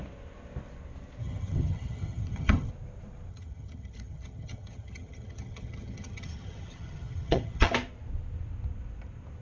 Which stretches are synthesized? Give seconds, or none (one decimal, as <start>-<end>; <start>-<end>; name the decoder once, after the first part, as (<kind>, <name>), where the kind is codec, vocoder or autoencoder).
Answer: 1.2-2.7 (vocoder, HiFi-GAN); 3.3-7.7